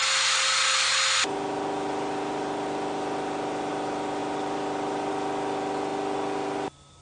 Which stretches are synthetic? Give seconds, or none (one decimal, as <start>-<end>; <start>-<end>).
none